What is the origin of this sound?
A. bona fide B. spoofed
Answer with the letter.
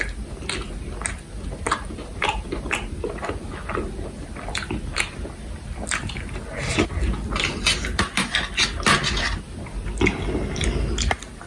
A